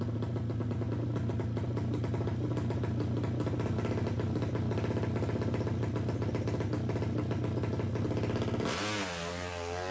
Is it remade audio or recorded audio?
recorded